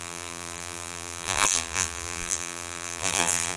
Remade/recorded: remade